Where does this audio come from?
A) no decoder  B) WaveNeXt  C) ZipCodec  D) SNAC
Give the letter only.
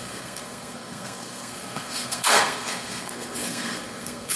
D